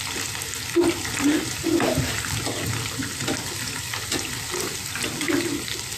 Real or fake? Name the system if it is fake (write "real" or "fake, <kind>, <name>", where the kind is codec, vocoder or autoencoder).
real